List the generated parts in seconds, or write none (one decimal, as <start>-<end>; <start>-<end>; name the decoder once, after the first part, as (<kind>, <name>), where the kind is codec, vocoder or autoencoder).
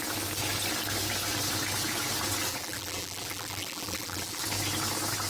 2.5-4.4 (vocoder, BigVGAN v2)